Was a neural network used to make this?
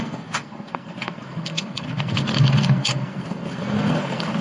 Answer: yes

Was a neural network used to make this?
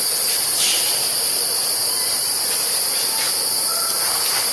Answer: no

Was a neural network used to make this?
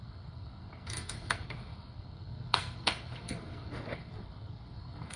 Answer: yes